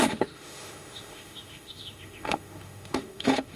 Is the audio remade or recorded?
remade